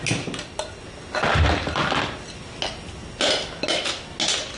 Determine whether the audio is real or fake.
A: real